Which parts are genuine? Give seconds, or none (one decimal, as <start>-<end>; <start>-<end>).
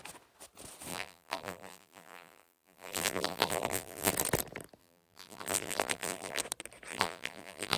0.0-0.9; 4.1-4.8; 6.4-6.9